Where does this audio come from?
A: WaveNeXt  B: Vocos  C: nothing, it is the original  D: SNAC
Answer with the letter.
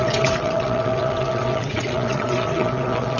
A